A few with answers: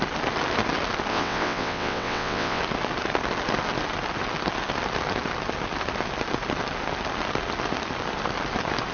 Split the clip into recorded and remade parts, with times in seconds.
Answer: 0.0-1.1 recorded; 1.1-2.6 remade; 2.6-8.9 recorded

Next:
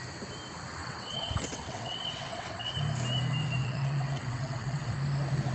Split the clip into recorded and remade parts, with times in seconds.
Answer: 0.0-0.8 recorded; 0.8-2.7 remade; 2.7-3.6 recorded; 3.6-4.9 remade; 4.9-5.5 recorded

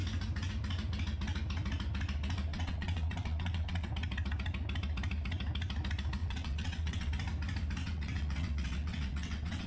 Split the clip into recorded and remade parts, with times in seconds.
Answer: 0.0-2.5 recorded; 2.5-3.9 remade; 3.9-6.2 recorded; 6.2-7.1 remade; 7.1-7.8 recorded; 7.8-9.7 remade